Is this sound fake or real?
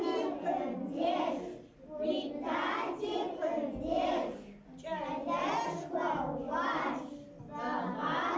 real